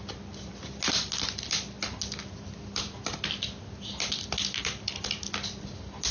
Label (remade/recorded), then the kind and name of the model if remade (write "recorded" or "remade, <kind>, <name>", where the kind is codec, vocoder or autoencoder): recorded